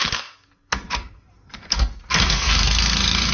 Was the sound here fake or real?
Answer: fake